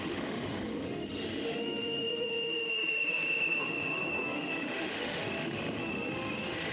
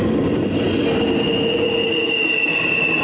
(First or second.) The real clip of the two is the second